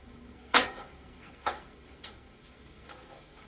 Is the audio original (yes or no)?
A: no